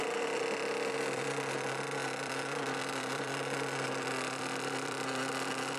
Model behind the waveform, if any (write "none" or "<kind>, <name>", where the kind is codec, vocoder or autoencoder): vocoder, BigVGAN v2